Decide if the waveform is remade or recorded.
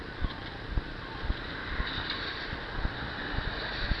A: recorded